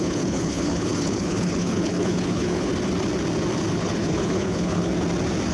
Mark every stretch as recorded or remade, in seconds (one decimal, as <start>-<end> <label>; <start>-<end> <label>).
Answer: 0.0-2.7 remade; 2.7-3.7 recorded; 3.7-4.9 remade; 4.9-5.5 recorded